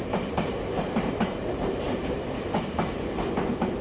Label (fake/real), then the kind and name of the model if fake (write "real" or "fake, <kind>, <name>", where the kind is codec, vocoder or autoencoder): fake, vocoder, BigVGAN v2